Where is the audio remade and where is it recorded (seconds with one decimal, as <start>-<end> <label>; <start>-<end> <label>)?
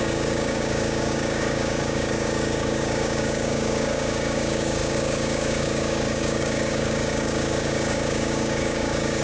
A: 0.0-9.2 remade